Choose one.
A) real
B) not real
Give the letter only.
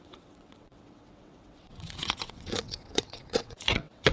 B